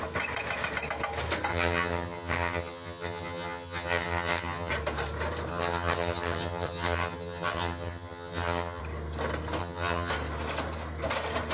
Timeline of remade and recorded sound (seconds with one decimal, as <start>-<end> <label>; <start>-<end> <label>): 0.0-1.5 recorded; 1.5-4.7 remade; 4.7-5.5 recorded; 5.5-8.8 remade; 8.8-9.6 recorded; 9.6-10.1 remade; 10.1-11.5 recorded